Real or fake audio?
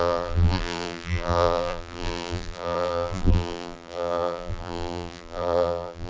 fake